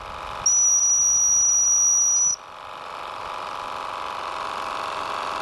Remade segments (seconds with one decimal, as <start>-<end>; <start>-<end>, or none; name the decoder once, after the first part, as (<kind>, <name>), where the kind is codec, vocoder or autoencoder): 2.3-3.2 (vocoder, BigVGAN v2)